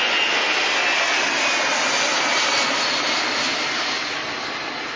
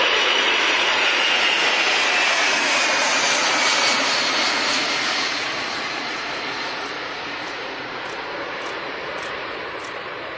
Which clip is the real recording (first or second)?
first